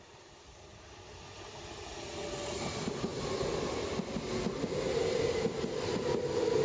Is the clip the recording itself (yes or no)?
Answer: yes